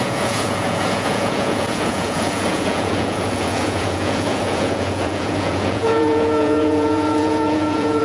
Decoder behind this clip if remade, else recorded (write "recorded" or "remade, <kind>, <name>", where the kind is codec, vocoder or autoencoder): remade, vocoder, Vocos